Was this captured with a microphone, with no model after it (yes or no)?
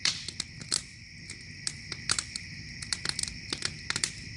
no